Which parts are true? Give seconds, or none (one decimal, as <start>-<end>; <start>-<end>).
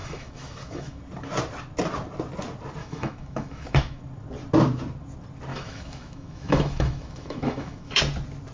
1.0-2.8; 4.0-5.5; 8.0-8.5